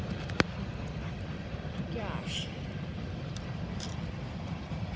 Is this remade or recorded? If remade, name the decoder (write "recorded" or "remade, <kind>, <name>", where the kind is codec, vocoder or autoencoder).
remade, vocoder, BigVGAN v2